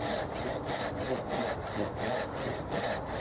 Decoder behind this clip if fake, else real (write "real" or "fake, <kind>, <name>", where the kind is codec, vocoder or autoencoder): real